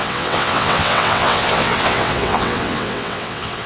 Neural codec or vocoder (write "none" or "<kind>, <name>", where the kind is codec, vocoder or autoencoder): vocoder, WaveNeXt